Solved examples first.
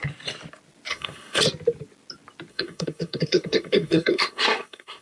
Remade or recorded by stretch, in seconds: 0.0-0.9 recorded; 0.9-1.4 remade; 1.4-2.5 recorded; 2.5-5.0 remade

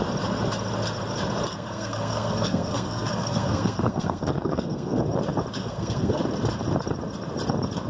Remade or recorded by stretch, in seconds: 0.0-1.5 recorded; 1.5-5.0 remade; 5.0-5.6 recorded; 5.6-6.2 remade; 6.2-7.9 recorded

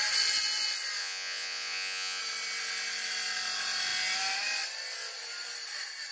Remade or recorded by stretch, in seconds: 0.0-1.0 recorded; 1.0-2.2 remade; 2.2-6.1 recorded